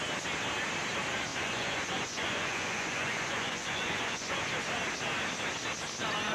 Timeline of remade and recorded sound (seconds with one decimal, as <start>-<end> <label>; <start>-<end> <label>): 0.0-1.3 recorded; 1.3-4.4 remade; 4.4-6.3 recorded